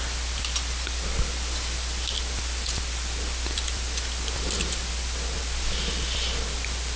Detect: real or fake real